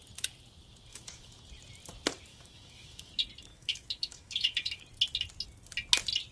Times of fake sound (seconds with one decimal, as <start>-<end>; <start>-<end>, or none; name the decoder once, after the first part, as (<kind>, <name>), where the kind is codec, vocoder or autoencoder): 0.9-1.4 (autoencoder, DAC-VAE); 2.3-3.1; 3.5-4.8